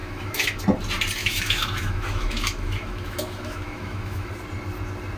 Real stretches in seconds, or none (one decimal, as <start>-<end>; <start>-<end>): 0.6-1.2; 4.3-5.2